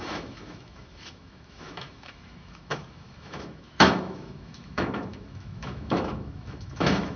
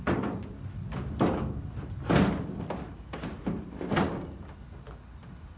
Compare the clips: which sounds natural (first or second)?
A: second